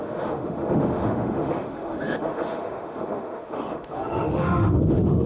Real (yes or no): no